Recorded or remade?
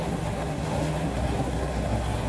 remade